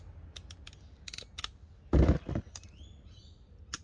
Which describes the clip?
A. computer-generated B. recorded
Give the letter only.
B